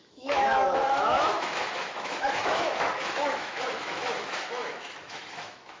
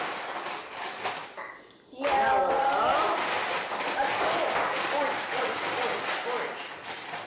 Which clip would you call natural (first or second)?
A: second